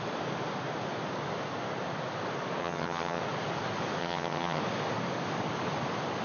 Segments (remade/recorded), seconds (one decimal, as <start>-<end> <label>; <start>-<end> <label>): 0.0-2.6 recorded; 2.6-3.2 remade; 3.2-4.0 recorded; 4.0-4.6 remade; 4.6-6.2 recorded